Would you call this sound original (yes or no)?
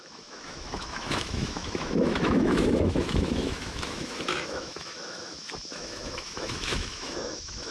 no